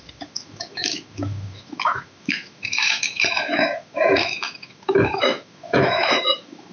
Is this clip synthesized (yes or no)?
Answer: yes